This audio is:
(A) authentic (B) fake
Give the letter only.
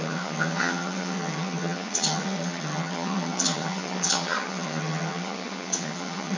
B